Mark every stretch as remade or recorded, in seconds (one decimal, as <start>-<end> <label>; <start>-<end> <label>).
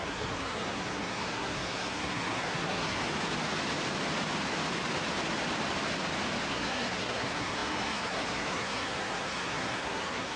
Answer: 0.0-3.0 remade; 3.0-6.5 recorded; 6.5-10.4 remade